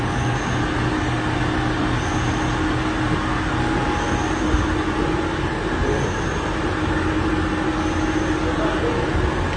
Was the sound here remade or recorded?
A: recorded